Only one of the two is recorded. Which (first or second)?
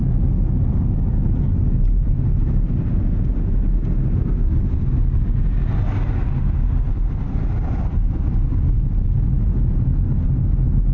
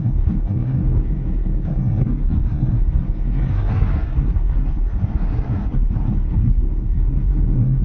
first